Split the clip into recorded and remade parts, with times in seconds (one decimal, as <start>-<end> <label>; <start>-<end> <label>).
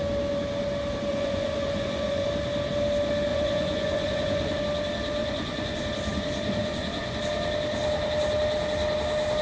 0.0-1.1 recorded; 1.1-2.3 remade; 2.3-3.3 recorded; 3.3-4.6 remade; 4.6-5.2 recorded; 5.2-5.8 remade; 5.8-6.6 recorded; 6.6-7.2 remade; 7.2-9.4 recorded